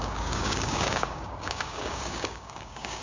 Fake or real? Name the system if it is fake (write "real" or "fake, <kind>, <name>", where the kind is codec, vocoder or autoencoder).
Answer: fake, codec, DAC